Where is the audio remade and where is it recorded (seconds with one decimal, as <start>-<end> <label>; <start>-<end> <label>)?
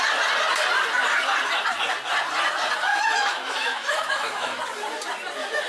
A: 0.0-2.9 recorded; 2.9-4.6 remade; 4.6-5.7 recorded